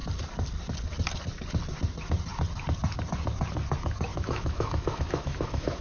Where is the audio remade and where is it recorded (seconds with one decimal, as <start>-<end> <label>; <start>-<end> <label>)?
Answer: 0.0-4.1 recorded; 4.1-5.8 remade